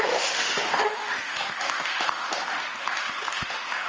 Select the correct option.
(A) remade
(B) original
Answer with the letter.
A